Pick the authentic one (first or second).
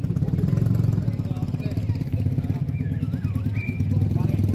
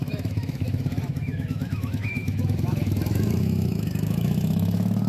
first